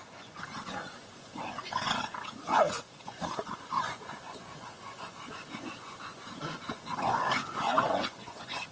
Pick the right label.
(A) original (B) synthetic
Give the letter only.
B